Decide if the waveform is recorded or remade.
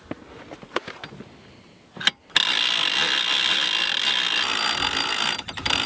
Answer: recorded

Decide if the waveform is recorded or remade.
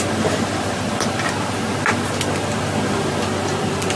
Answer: recorded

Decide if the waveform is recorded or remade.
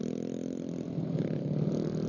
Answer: recorded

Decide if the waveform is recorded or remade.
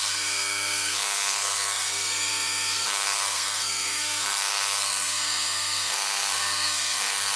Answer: remade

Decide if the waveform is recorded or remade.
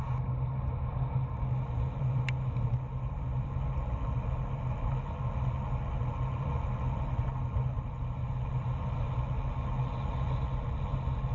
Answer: recorded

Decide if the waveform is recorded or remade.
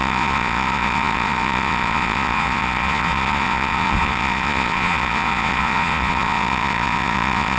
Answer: remade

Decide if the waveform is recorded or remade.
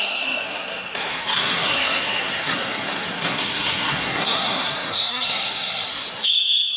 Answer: remade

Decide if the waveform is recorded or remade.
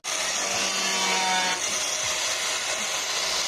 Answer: recorded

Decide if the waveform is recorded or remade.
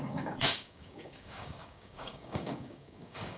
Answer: remade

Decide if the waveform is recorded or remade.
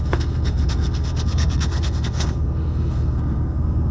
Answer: remade